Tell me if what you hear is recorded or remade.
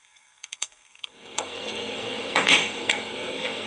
remade